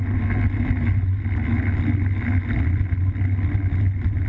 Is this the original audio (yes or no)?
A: yes